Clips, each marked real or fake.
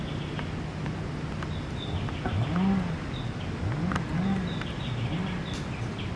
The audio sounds real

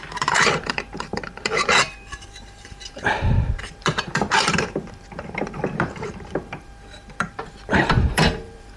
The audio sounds fake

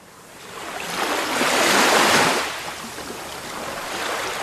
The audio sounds real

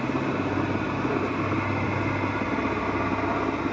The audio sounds real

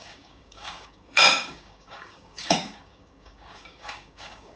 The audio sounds fake